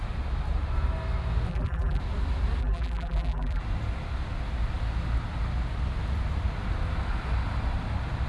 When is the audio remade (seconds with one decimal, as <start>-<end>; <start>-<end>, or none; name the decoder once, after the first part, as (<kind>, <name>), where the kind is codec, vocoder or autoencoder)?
1.5-2.0 (vocoder, BigVGAN v2); 2.6-3.6